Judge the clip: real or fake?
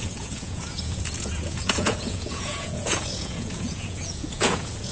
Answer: fake